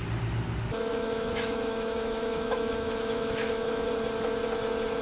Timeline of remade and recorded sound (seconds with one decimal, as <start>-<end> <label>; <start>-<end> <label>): 0.0-0.9 recorded; 0.9-3.9 remade; 3.9-5.0 recorded